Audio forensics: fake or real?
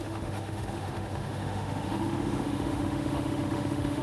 fake